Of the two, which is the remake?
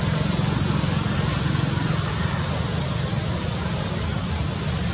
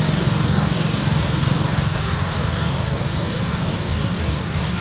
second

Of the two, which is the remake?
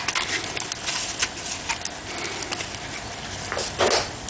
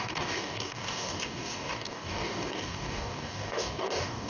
second